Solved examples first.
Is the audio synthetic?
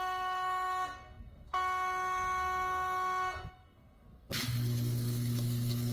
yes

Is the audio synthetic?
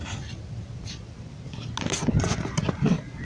no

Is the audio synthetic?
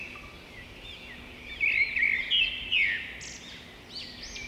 no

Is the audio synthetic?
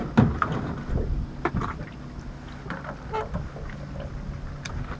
no